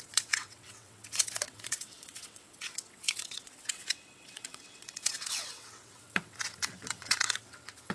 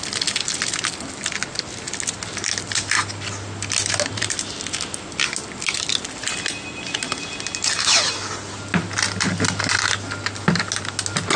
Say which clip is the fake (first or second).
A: first